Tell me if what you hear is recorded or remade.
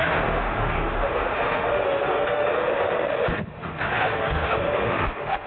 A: remade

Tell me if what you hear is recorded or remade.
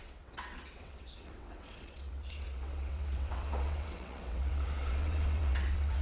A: remade